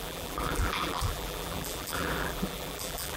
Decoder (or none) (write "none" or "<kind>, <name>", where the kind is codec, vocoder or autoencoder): vocoder, BigVGAN v2